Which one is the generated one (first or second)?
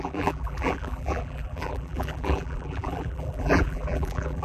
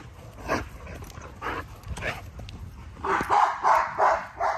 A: first